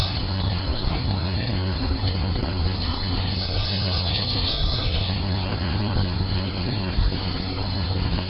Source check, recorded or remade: remade